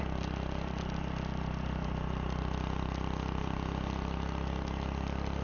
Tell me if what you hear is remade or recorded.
recorded